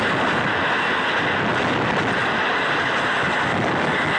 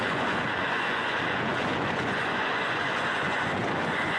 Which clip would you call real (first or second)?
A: first